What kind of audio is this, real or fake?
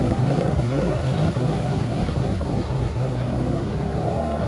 fake